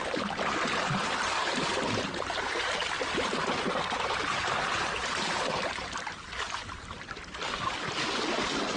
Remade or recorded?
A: recorded